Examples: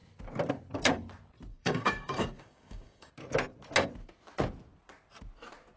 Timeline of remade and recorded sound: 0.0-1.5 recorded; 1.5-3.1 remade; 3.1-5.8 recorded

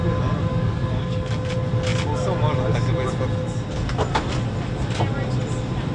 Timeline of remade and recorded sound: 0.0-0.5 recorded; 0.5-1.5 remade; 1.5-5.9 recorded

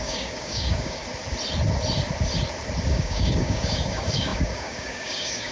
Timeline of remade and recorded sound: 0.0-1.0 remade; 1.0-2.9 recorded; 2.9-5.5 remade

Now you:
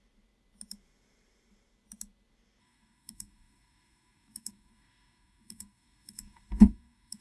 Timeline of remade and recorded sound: 0.0-2.6 recorded; 2.6-7.2 remade

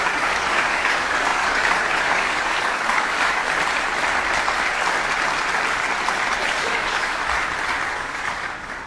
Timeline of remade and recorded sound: 0.0-3.4 remade; 3.4-6.5 recorded; 6.5-7.2 remade; 7.2-7.9 recorded; 7.9-8.9 remade